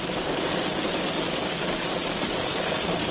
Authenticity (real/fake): real